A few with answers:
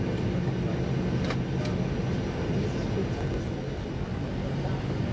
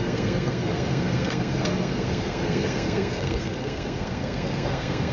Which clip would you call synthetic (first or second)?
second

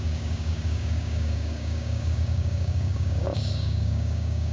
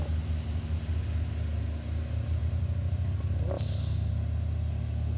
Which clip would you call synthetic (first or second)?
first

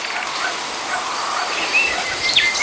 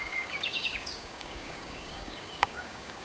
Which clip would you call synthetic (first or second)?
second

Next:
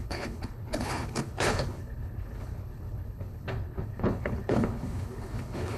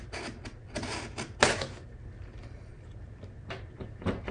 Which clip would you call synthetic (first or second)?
first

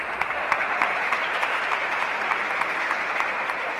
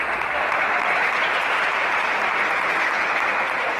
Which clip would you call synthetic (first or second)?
first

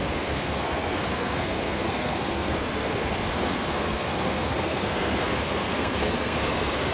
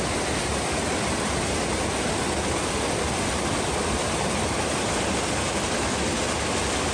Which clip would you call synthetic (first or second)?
first